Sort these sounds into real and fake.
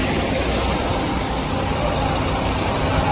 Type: real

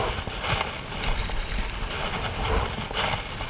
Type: real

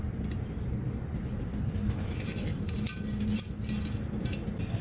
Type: real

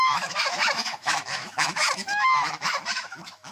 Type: fake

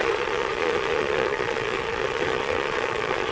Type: fake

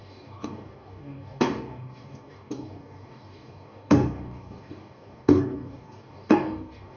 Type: fake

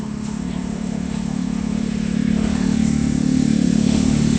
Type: fake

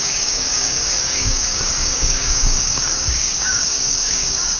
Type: fake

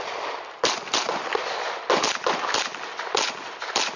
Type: real